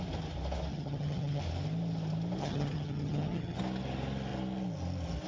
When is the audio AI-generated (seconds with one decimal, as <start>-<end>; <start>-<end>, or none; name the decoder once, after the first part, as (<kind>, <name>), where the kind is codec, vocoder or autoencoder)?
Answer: 0.7-1.4 (vocoder, HiFi-GAN); 2.4-3.6

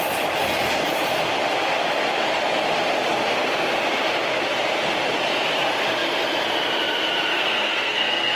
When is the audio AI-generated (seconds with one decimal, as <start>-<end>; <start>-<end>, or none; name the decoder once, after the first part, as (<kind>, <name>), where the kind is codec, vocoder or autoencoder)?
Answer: 7.3-8.4 (codec, SNAC)

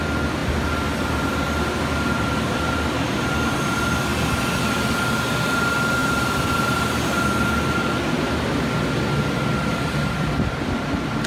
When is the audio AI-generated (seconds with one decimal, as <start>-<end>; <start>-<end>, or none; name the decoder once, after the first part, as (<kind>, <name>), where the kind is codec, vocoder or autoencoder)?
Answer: 6.0-7.2 (vocoder, BigVGAN v2)